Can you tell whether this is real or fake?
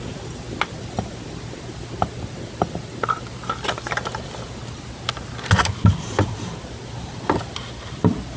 real